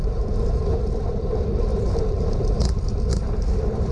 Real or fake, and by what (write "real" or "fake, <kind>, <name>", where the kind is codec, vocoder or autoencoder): fake, vocoder, BigVGAN v2